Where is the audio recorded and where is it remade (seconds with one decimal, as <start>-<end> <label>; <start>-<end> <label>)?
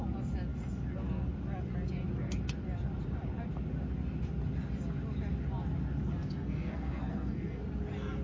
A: 0.0-6.2 recorded; 6.2-7.6 remade; 7.6-8.2 recorded